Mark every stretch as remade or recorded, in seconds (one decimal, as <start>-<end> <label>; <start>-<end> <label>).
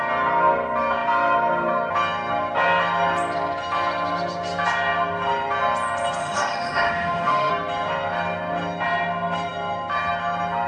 0.0-6.2 recorded; 6.2-7.5 remade; 7.5-10.7 recorded